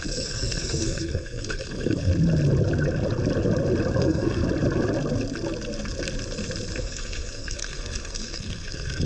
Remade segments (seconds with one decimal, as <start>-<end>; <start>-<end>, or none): 0.0-2.1; 4.0-4.4; 6.8-9.1